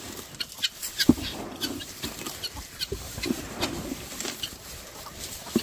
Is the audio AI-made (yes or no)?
yes